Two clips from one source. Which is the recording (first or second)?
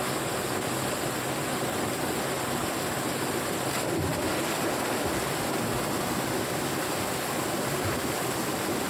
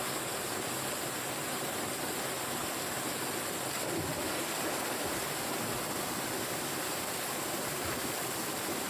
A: first